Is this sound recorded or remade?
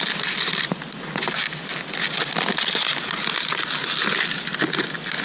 recorded